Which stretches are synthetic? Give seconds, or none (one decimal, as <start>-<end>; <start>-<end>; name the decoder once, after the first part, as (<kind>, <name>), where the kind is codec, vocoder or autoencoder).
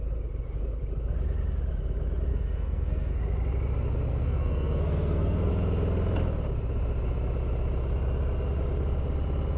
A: 2.3-3.2 (codec, SNAC); 4.1-5.5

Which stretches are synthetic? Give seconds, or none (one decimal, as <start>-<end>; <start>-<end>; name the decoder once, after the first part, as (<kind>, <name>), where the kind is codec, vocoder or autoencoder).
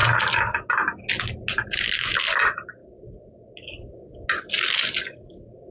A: none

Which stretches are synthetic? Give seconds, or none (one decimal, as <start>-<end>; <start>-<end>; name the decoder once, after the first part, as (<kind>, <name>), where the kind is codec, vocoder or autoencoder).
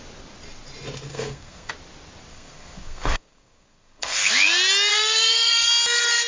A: 1.1-1.7 (codec, SNAC); 2.3-4.3; 4.9-5.7